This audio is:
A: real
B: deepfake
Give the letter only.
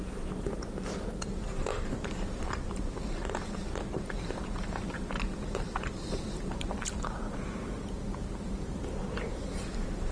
B